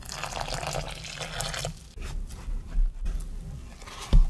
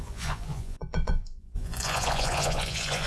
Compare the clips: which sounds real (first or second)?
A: first